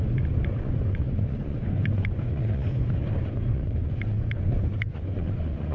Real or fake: fake